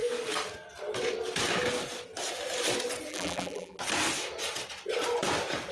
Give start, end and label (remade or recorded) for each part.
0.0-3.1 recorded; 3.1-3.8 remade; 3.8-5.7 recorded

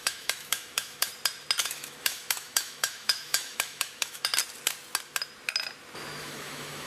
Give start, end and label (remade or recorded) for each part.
0.0-1.1 remade; 1.1-1.6 recorded; 1.6-4.3 remade; 4.3-6.2 recorded; 6.2-6.9 remade

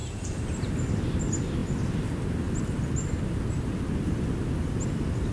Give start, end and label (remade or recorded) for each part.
0.0-1.2 remade; 1.2-5.3 recorded

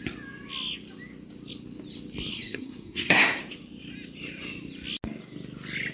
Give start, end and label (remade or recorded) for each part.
0.0-2.3 recorded; 2.3-3.4 remade; 3.4-5.9 recorded

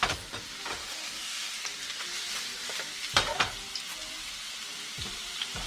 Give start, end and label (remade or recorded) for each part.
0.0-0.8 recorded; 0.8-1.5 remade; 1.5-5.7 recorded

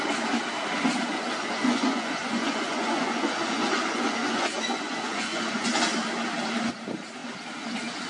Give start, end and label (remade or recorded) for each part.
0.0-1.1 recorded; 1.1-5.7 remade; 5.7-8.1 recorded